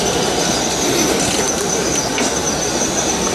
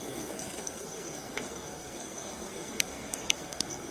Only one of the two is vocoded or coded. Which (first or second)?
second